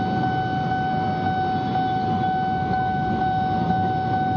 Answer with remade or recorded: recorded